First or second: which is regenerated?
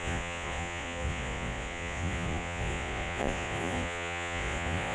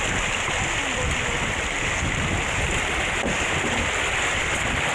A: first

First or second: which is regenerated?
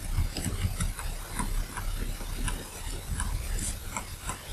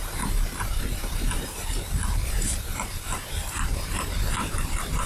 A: second